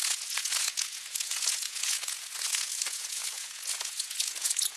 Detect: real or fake fake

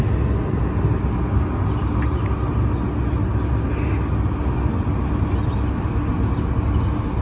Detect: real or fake real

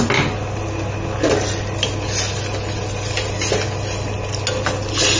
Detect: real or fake real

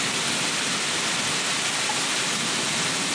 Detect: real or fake real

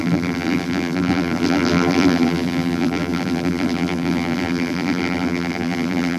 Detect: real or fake fake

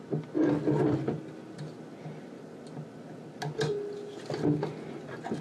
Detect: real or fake real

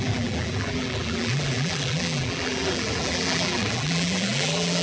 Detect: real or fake fake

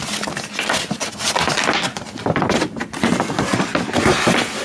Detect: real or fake real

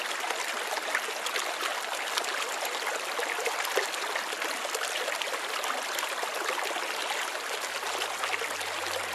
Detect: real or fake real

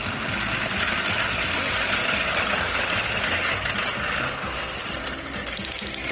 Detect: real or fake real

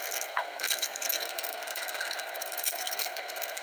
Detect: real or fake fake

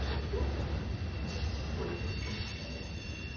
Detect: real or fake real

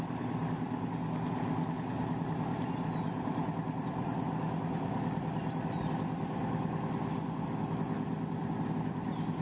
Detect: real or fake real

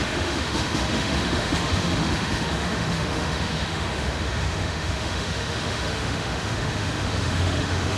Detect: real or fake fake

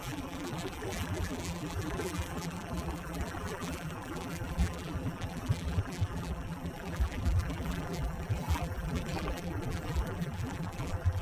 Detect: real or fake fake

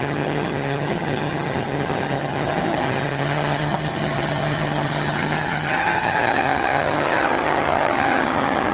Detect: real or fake fake